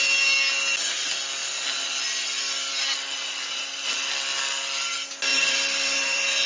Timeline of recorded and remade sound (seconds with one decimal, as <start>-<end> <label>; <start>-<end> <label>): 0.0-5.3 recorded; 5.3-6.5 remade